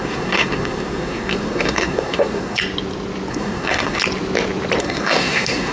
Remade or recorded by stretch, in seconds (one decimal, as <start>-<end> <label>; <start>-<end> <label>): 0.0-2.6 remade; 2.6-3.3 recorded; 3.3-4.0 remade; 4.0-4.8 recorded; 4.8-5.7 remade